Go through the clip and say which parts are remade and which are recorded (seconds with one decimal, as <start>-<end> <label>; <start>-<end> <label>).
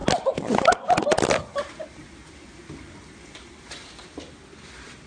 0.0-4.1 recorded; 4.1-5.1 remade